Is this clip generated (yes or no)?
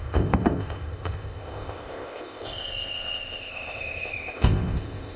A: yes